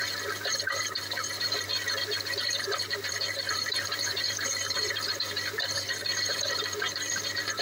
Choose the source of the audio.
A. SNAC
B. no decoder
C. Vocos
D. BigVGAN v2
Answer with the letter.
D